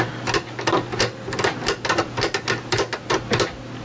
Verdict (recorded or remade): recorded